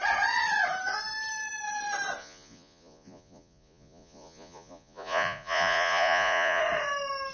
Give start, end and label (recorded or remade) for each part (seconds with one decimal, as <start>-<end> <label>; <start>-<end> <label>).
0.0-2.2 recorded; 2.2-6.6 remade; 6.6-7.3 recorded